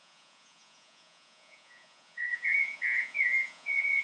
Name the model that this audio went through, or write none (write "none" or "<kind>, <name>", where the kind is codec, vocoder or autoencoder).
vocoder, Vocos